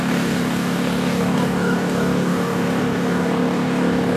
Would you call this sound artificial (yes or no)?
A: yes